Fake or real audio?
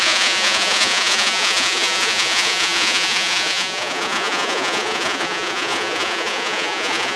fake